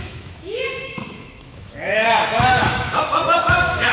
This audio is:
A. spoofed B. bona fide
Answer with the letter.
A